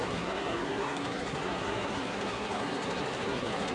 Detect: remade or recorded remade